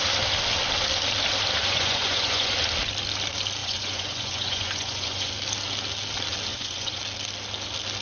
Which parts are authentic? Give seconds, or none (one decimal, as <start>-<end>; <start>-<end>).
0.0-1.6; 2.5-3.6; 5.3-6.5; 7.0-8.0